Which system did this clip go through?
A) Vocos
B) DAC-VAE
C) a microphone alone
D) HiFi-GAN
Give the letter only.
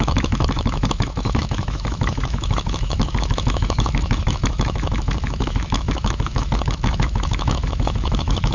B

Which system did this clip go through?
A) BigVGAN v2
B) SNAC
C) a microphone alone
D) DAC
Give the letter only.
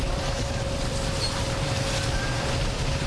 A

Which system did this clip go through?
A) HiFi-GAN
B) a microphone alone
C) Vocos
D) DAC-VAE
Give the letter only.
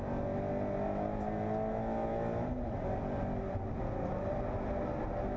B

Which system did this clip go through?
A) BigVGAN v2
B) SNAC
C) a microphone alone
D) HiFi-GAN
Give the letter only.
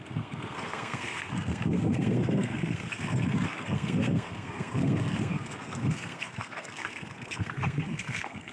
B